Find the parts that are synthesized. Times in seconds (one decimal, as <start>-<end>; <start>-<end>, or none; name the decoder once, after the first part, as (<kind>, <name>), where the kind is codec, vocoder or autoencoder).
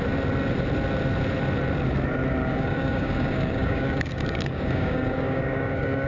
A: 2.4-6.1 (codec, DAC)